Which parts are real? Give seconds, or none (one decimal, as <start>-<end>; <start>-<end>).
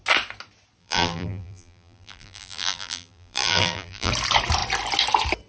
0.0-0.8; 4.1-5.5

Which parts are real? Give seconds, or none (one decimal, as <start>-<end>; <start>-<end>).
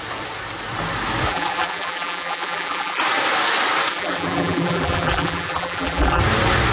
0.0-1.3; 3.0-3.9; 6.2-6.7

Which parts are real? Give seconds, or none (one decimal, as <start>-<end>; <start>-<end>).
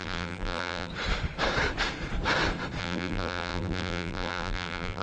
0.9-2.8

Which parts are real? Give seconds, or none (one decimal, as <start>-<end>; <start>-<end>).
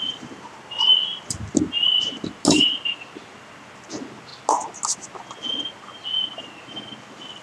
0.0-7.4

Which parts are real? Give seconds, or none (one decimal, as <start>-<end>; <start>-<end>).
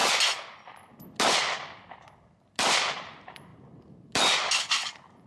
0.0-2.9; 3.5-4.6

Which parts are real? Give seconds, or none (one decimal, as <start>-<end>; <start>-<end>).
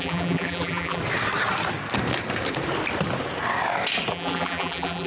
1.0-4.1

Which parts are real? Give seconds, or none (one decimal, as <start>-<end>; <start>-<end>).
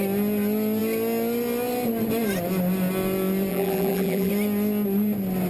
0.0-3.5; 4.3-5.5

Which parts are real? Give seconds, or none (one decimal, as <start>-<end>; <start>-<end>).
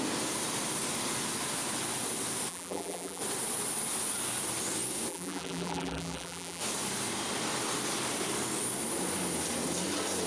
0.0-2.5; 3.2-5.1; 6.6-10.3